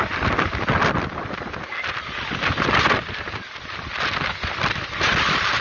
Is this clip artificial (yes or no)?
no